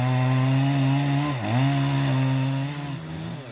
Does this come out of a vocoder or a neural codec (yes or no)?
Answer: no